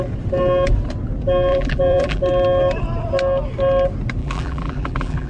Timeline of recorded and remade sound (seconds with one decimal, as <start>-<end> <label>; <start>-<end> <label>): 0.0-1.5 recorded; 1.5-2.2 remade; 2.2-4.2 recorded; 4.2-5.3 remade